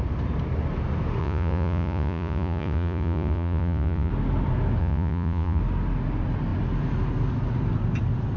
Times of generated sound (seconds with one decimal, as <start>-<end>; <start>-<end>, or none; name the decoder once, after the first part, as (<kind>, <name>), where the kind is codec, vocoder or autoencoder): 1.2-4.1 (vocoder, Vocos); 4.8-5.6